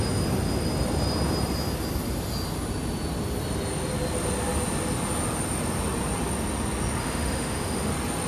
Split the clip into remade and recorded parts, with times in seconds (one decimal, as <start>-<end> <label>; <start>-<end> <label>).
0.0-7.0 recorded; 7.0-7.9 remade; 7.9-8.3 recorded